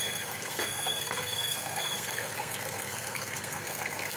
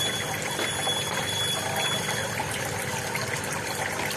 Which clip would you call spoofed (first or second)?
first